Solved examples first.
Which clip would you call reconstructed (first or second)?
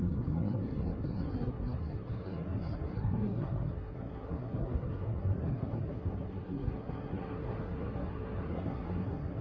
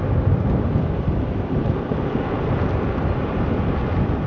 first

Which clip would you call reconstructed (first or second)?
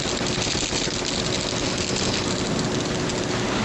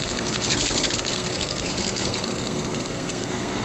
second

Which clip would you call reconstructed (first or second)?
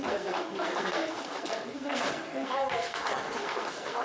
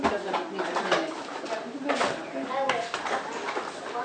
first